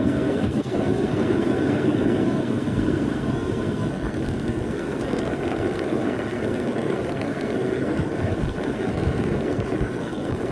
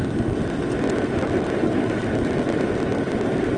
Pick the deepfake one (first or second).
first